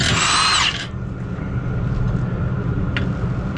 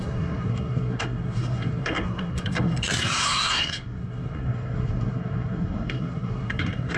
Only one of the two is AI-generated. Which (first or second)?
second